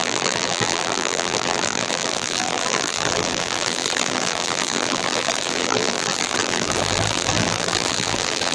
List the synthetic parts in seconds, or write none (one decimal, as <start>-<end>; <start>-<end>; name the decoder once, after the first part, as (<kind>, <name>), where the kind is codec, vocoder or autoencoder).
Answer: 0.0-8.5 (vocoder, BigVGAN v2)